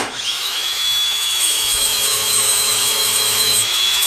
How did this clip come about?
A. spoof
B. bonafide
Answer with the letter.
A